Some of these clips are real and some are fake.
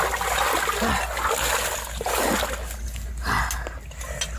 real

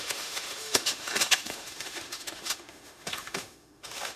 fake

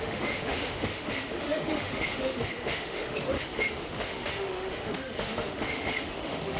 fake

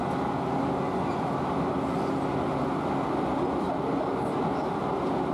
real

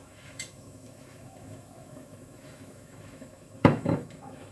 fake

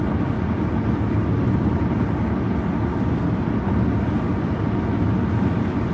real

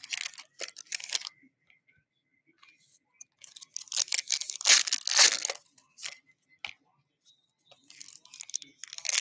real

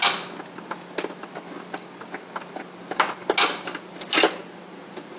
real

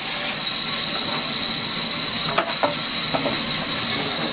real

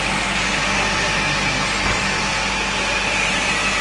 real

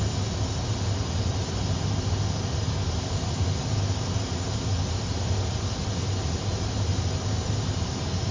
real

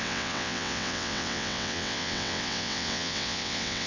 fake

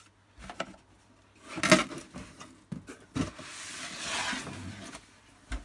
real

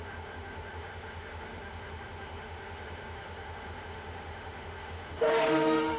fake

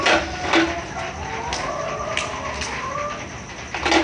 real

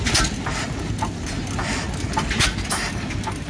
real